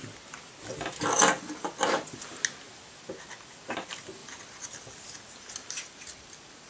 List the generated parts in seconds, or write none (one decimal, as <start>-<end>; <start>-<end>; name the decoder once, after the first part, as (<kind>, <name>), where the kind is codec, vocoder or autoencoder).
none